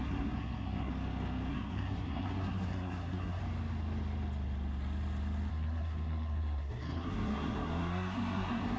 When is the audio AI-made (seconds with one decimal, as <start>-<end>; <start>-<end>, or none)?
0.0-0.9; 1.5-3.4; 5.5-8.8